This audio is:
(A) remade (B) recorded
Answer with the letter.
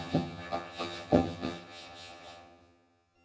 A